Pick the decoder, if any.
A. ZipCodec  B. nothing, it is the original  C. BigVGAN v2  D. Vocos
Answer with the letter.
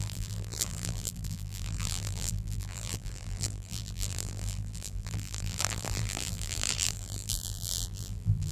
C